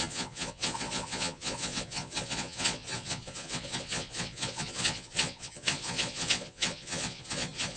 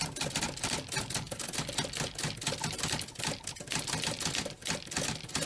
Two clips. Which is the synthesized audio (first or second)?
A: first